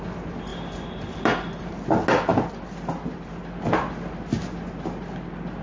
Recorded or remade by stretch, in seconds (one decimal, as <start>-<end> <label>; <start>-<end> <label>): 0.0-5.6 recorded